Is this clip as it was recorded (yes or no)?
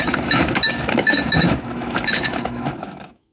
no